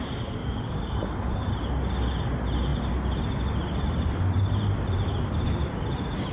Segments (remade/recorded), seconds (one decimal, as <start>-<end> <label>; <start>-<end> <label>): 0.0-0.4 recorded; 0.4-1.5 remade; 1.5-6.3 recorded